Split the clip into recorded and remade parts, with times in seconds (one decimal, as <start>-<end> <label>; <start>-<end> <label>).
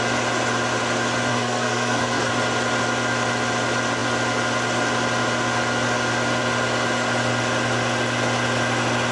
0.0-1.3 recorded; 1.3-2.3 remade; 2.3-9.1 recorded